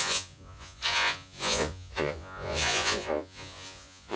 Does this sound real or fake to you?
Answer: fake